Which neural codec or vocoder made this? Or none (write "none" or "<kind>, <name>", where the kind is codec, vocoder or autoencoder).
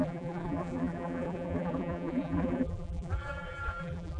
vocoder, BigVGAN v2